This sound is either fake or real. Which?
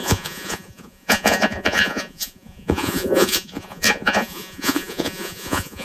fake